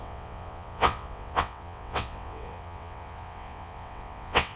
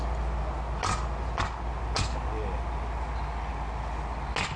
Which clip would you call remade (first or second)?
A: first